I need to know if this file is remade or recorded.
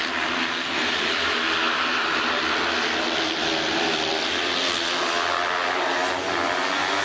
recorded